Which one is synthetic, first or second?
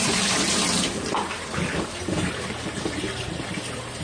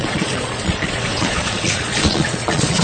second